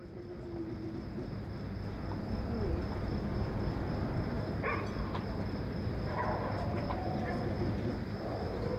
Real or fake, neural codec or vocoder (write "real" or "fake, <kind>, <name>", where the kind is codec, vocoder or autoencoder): real